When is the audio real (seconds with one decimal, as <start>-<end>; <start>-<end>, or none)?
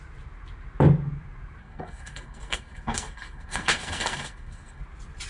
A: 0.0-1.6; 4.8-5.3